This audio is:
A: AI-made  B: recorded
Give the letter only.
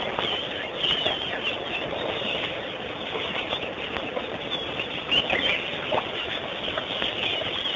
B